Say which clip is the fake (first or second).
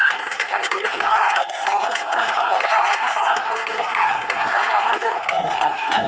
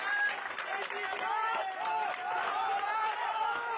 first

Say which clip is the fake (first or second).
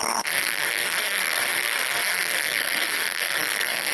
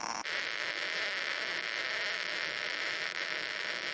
first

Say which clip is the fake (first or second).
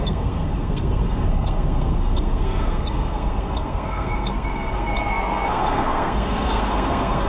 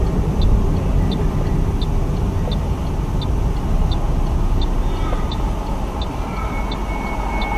first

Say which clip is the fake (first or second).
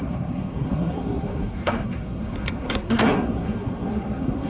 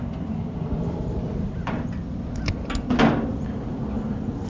first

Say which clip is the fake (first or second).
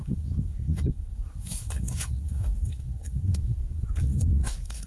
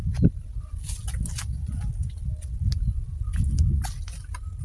first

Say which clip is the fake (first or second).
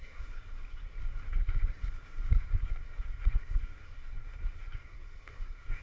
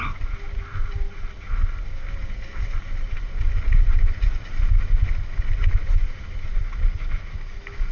first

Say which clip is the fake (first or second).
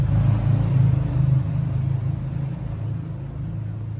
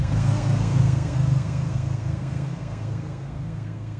second